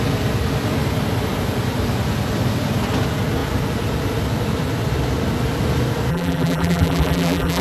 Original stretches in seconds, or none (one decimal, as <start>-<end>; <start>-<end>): 0.0-6.1